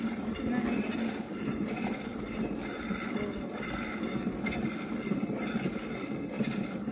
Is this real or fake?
real